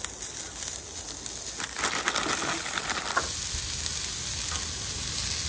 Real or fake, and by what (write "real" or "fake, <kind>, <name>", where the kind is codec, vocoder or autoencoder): real